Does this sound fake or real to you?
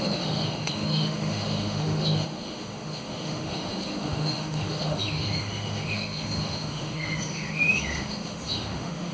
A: fake